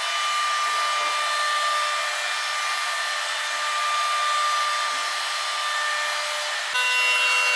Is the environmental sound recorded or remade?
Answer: recorded